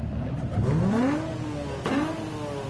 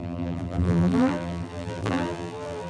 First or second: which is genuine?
first